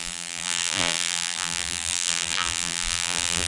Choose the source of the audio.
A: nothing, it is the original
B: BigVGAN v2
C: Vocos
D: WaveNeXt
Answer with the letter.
B